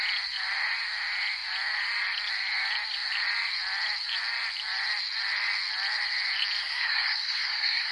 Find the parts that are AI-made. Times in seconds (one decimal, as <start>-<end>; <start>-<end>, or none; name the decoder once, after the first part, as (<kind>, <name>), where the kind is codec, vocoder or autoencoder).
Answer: 6.6-7.9 (codec, SNAC)